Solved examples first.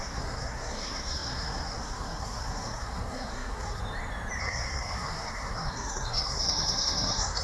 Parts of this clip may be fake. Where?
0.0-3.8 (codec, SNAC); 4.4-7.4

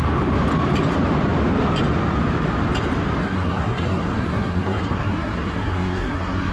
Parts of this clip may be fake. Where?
3.2-6.5 (codec, SNAC)

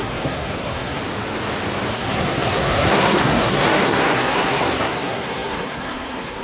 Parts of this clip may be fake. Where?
0.0-1.0 (codec, SNAC); 1.9-6.4

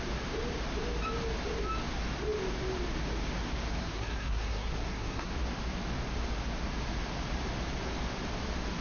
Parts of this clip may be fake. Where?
3.8-5.3 (codec, SNAC)